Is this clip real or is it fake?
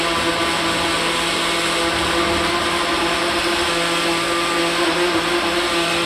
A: real